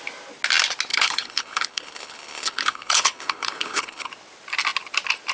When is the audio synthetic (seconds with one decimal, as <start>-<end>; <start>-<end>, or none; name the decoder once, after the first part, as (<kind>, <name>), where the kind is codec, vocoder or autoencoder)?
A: 0.9-4.1 (codec, HILCodec)